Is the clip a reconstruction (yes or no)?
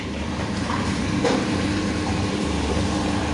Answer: yes